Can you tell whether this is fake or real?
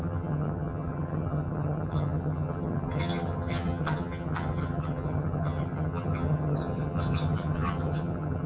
fake